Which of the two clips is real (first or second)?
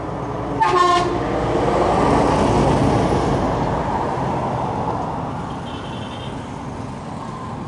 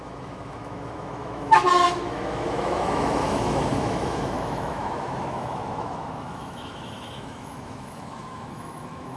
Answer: first